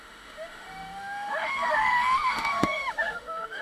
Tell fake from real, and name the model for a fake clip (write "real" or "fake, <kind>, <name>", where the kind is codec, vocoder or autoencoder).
fake, autoencoder, DAC-VAE